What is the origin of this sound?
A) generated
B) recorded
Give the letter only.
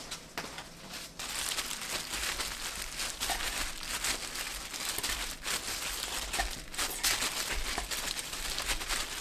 B